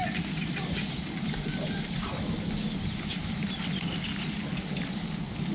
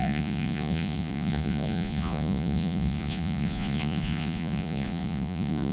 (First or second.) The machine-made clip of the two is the second